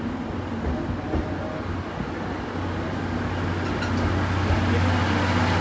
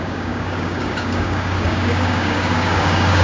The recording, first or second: first